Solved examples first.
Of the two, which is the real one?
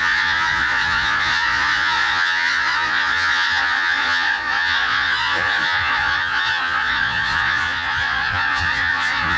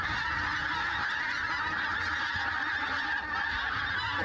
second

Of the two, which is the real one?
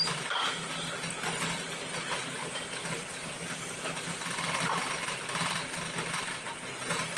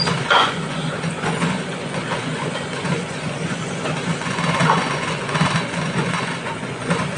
first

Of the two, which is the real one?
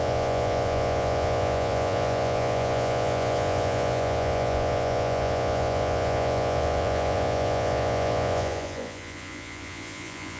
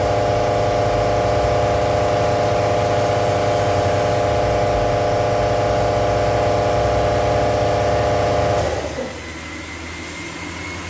second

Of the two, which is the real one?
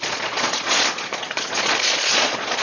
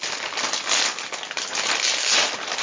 second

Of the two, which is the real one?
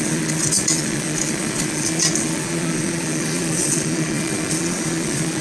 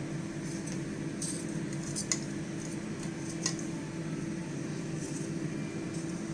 second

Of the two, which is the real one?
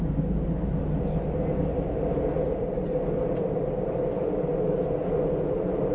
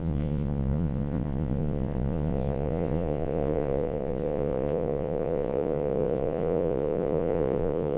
first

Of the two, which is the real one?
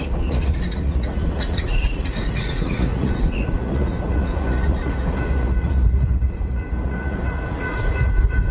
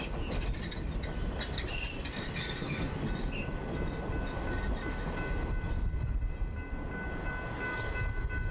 second